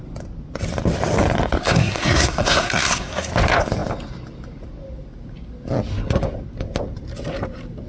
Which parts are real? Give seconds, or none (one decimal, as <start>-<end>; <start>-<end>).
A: 0.0-1.6; 3.3-7.9

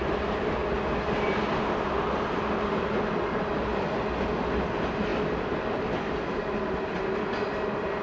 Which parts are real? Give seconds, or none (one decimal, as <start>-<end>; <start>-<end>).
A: 0.0-8.0

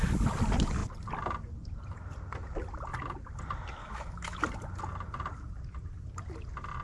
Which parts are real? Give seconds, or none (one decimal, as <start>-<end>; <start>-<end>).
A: 0.0-3.8; 4.4-6.8

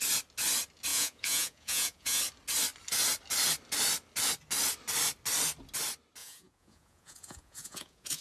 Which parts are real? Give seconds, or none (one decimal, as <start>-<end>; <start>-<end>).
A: 0.0-0.9; 2.2-6.2